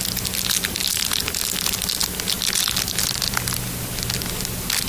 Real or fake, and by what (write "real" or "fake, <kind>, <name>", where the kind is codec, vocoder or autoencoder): real